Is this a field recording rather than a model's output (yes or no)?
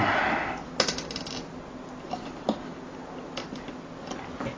yes